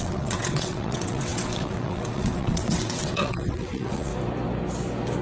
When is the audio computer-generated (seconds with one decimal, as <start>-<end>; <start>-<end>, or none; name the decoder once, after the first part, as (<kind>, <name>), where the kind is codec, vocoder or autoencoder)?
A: 0.0-4.1 (vocoder, WaveNeXt)